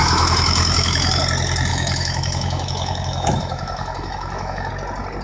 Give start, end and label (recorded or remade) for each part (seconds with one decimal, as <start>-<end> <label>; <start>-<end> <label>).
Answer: 0.0-1.2 remade; 1.2-1.7 recorded; 1.7-4.7 remade; 4.7-5.2 recorded